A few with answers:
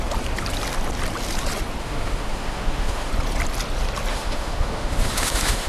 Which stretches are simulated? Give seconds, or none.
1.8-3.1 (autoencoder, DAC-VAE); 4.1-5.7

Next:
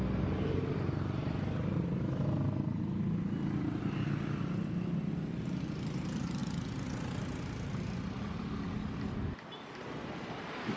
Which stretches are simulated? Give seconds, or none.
none

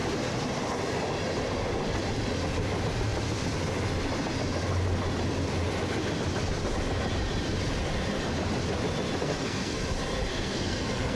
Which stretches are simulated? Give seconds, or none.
9.2-9.8 (codec, SNAC); 10.3-11.2

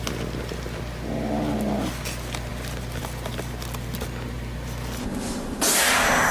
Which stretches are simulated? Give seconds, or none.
5.1-5.7 (vocoder, BigVGAN v2)

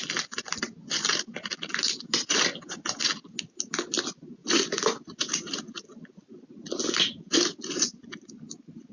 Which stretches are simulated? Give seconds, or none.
none

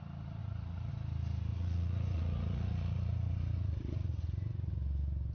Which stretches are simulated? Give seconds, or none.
0.4-0.9 (vocoder, Vocos); 1.5-4.7

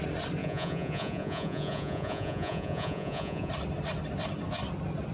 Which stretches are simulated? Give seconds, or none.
0.4-3.5 (vocoder, Vocos)

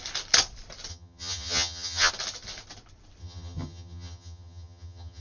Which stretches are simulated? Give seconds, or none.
0.9-2.1 (vocoder, HiFi-GAN); 3.2-5.2